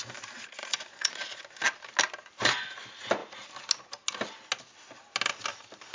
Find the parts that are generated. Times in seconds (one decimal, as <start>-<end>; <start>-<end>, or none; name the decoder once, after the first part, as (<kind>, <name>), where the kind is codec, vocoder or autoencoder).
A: 0.6-1.4 (vocoder, Vocos)